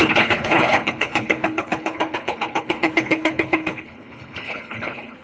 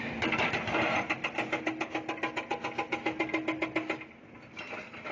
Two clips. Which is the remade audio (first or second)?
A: first